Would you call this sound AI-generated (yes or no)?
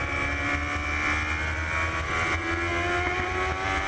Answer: no